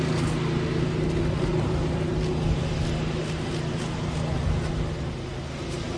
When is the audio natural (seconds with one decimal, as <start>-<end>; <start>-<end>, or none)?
0.0-6.0